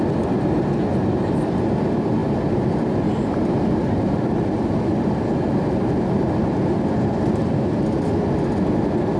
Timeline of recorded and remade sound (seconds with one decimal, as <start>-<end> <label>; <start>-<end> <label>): 0.0-9.2 recorded